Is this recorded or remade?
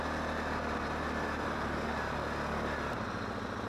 recorded